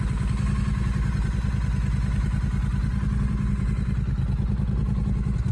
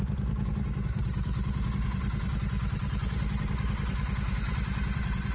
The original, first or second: first